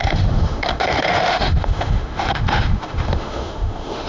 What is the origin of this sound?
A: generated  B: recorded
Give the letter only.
A